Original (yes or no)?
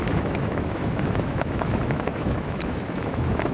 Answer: no